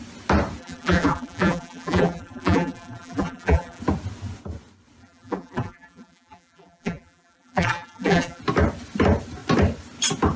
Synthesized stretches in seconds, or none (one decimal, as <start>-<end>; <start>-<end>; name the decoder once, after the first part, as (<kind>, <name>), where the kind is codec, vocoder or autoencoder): 0.6-3.8 (vocoder, BigVGAN v2); 5.0-8.4